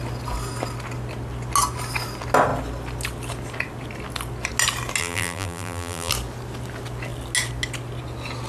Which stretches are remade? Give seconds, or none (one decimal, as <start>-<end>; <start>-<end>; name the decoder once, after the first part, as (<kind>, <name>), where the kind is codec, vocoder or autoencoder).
5.0-6.1 (vocoder, BigVGAN v2)